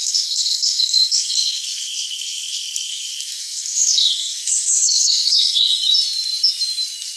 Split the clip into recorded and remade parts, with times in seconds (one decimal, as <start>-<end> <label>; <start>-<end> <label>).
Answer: 0.0-5.7 remade; 5.7-7.2 recorded